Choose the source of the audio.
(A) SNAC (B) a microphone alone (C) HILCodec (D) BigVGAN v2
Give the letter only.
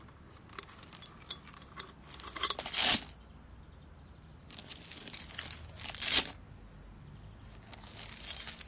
B